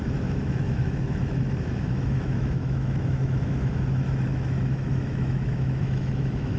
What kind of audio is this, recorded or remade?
remade